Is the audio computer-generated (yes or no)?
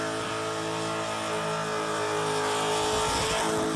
no